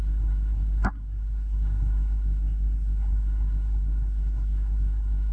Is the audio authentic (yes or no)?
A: no